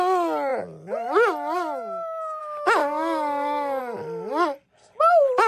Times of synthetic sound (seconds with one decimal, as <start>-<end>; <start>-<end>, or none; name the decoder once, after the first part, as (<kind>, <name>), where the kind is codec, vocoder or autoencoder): 2.8-3.8 (codec, DAC)

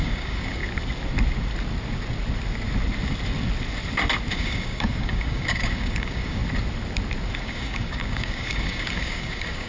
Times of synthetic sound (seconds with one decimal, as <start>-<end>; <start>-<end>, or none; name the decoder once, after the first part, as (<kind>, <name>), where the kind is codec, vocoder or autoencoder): 0.0-0.6 (codec, DAC); 4.3-6.4; 7.4-9.7

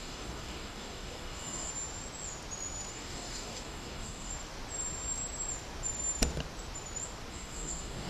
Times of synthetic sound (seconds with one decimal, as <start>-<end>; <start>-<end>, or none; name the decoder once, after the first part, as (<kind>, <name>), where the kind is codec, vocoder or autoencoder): 0.0-1.7 (codec, DAC); 2.9-4.3; 7.3-8.1

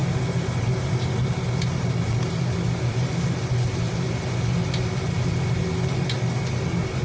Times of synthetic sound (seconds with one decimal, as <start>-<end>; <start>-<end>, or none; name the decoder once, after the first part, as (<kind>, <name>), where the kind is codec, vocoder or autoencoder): none

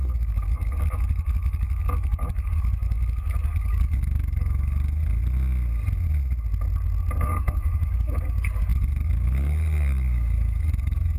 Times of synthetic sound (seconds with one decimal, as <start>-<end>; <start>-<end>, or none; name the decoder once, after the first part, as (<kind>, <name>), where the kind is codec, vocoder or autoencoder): 0.0-5.2 (codec, DAC); 7.2-11.2

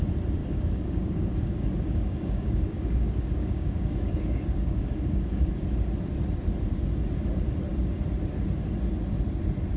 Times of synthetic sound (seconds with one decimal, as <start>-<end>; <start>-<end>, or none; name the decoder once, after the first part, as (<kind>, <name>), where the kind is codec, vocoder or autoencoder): 0.4-5.5 (codec, DAC)

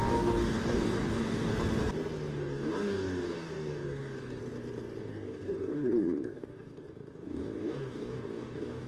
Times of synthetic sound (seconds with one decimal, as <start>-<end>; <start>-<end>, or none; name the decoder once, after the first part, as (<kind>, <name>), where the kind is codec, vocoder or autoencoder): 0.0-1.5 (codec, DAC); 2.3-4.4; 5.0-8.9